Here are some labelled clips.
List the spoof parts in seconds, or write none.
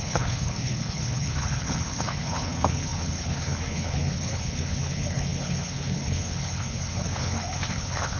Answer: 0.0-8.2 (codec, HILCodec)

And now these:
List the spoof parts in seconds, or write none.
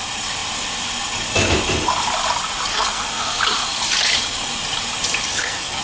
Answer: 2.7-3.4 (codec, SNAC); 5.3-5.8